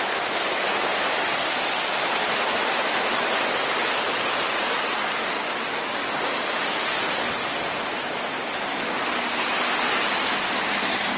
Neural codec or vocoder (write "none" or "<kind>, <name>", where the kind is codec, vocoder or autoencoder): none